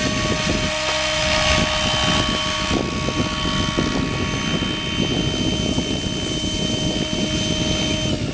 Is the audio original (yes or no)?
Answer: yes